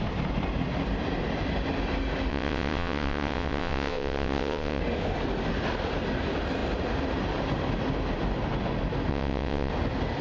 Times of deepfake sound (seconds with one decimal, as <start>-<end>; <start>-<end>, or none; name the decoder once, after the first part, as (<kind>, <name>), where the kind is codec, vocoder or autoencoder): 2.3-4.8 (vocoder, WaveNeXt); 9.1-9.7